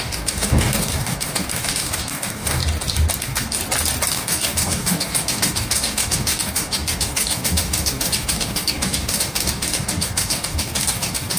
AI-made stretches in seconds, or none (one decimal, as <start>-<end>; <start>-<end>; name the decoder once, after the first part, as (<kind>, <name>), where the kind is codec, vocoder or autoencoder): 0.0-2.6 (codec, DAC); 3.2-3.6; 4.1-11.4